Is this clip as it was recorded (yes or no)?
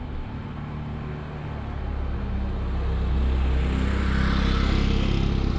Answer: yes